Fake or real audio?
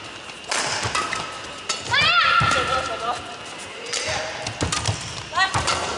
real